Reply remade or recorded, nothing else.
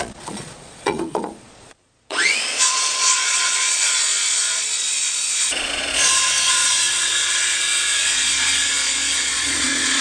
remade